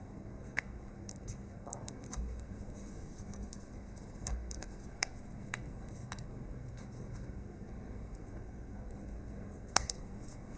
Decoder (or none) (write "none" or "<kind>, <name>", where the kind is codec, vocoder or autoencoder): codec, SNAC